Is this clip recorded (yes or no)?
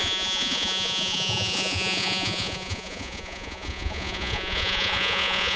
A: no